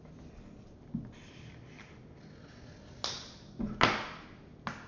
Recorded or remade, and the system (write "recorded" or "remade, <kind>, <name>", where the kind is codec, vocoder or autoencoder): recorded